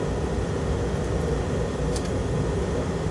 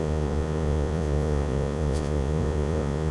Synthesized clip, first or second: second